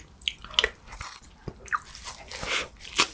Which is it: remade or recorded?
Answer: recorded